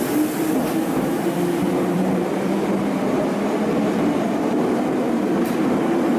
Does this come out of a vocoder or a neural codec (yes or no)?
yes